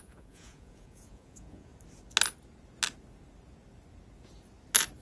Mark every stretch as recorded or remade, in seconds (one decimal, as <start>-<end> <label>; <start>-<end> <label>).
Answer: 0.0-1.7 remade; 1.7-5.0 recorded